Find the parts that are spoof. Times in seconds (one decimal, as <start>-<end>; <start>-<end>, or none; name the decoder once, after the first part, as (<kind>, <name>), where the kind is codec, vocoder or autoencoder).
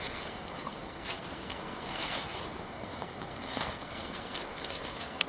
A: 0.0-5.3 (codec, SNAC)